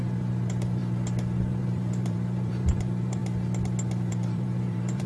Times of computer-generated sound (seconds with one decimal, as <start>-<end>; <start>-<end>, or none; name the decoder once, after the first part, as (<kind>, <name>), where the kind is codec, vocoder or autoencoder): 0.0-0.8 (vocoder, BigVGAN v2); 1.4-3.2; 4.1-5.1

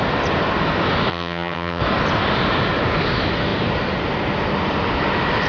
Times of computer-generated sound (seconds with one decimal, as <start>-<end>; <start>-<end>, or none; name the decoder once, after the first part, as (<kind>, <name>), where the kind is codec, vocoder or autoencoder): 1.1-1.8 (vocoder, HiFi-GAN)

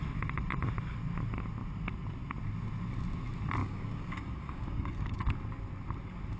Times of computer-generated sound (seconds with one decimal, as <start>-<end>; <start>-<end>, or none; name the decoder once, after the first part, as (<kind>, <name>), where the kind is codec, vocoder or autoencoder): 3.6-5.2 (codec, DAC)